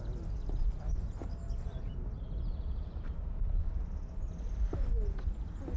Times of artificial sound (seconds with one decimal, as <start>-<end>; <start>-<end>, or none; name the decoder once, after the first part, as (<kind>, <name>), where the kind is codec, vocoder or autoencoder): none